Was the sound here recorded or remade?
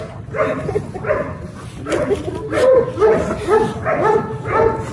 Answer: recorded